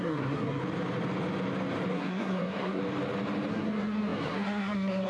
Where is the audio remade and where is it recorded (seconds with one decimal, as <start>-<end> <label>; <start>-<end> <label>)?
0.0-0.6 remade; 0.6-1.9 recorded; 1.9-2.8 remade; 2.8-3.5 recorded; 3.5-5.1 remade